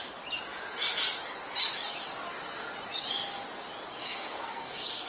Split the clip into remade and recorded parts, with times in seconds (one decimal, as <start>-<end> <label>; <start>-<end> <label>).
0.0-3.9 recorded; 3.9-5.1 remade